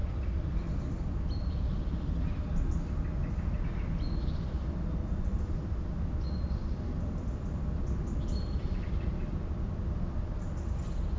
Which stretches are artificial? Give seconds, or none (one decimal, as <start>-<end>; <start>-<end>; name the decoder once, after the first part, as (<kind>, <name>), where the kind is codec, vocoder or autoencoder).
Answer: none